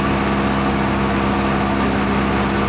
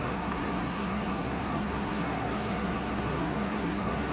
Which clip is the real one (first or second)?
first